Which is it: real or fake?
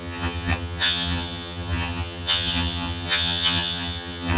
fake